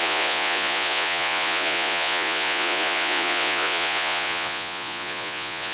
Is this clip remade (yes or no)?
yes